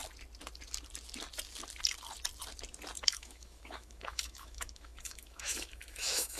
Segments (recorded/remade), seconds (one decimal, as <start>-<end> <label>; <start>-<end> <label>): 0.0-3.0 recorded; 3.0-6.4 remade

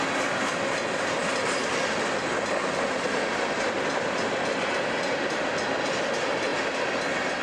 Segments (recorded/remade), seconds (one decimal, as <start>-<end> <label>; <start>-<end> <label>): 0.0-7.4 recorded

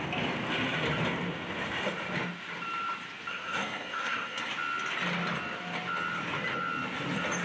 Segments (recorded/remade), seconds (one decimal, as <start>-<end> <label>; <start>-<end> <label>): 0.0-3.3 recorded; 3.3-4.5 remade; 4.5-7.4 recorded

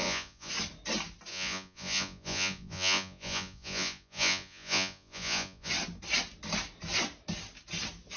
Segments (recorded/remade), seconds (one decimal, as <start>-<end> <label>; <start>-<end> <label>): 0.0-0.5 remade; 0.5-1.3 recorded; 1.3-5.7 remade; 5.7-8.2 recorded

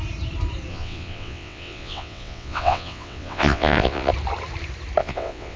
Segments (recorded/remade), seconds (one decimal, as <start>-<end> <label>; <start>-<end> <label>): 0.0-0.7 recorded; 0.7-4.1 remade; 4.1-5.0 recorded; 5.0-5.6 remade

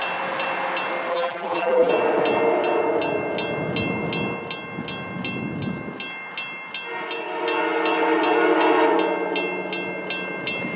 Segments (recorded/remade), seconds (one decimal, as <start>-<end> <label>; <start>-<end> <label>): 0.0-1.1 recorded; 1.1-1.9 remade; 1.9-10.8 recorded

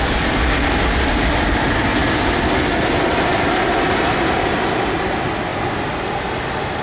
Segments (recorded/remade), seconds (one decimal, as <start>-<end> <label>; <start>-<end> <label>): 0.0-6.8 recorded